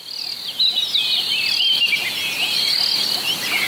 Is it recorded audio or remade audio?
recorded